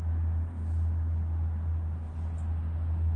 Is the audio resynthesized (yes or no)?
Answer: no